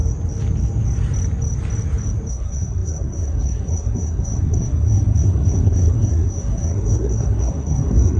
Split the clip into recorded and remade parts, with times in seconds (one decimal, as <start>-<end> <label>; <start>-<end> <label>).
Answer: 0.0-2.3 recorded; 2.3-8.2 remade